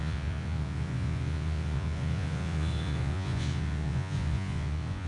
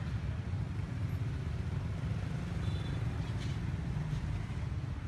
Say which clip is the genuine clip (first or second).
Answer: second